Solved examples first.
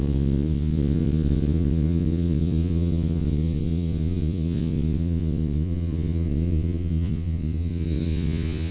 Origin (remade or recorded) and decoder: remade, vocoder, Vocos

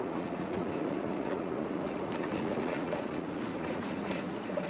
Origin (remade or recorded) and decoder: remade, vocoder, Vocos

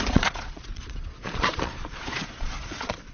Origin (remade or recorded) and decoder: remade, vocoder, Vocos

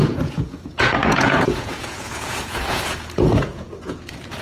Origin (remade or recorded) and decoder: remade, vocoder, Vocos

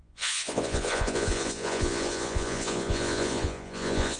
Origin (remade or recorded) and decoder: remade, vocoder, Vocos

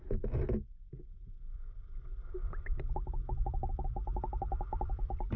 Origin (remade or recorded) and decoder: recorded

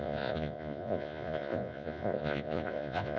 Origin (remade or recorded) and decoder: remade, vocoder, Vocos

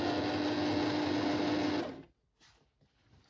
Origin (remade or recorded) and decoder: recorded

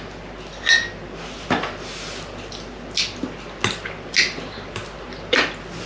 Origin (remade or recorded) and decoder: recorded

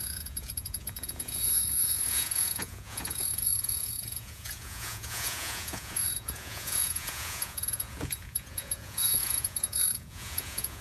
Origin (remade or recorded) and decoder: remade, vocoder, Vocos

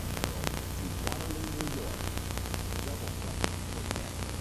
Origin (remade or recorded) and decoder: recorded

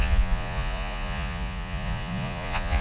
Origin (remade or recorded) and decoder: remade, vocoder, Vocos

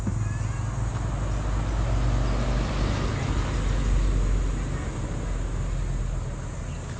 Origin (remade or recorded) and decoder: recorded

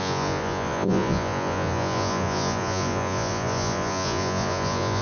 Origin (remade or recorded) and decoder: remade, vocoder, Vocos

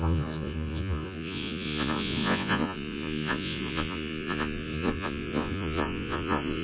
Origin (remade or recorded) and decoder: remade, vocoder, Vocos